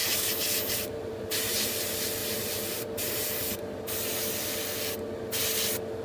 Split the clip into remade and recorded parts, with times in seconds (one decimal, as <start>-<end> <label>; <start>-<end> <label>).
0.0-1.7 remade; 1.7-2.2 recorded; 2.2-3.8 remade; 3.8-6.0 recorded